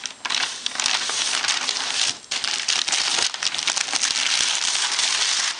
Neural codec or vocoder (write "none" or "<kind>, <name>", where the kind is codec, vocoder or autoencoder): none